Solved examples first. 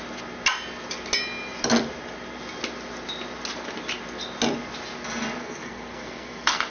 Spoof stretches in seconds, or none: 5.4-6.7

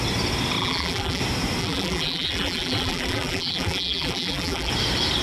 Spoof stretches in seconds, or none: 0.6-1.2; 1.6-4.7